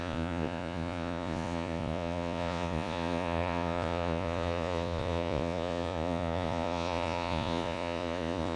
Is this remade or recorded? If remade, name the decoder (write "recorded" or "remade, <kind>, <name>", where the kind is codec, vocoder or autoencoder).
remade, vocoder, Vocos